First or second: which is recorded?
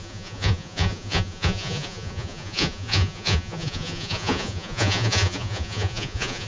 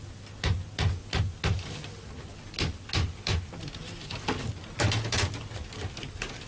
second